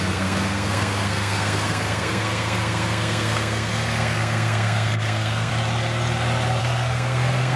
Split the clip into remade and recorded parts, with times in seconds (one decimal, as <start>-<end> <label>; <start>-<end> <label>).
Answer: 0.0-5.5 remade; 5.5-6.6 recorded; 6.6-7.6 remade